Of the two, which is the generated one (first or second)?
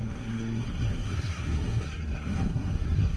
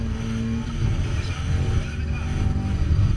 first